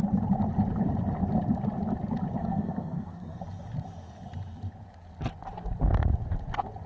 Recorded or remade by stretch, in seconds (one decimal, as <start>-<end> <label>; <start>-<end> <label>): 0.0-2.4 recorded; 2.4-3.4 remade; 3.4-6.9 recorded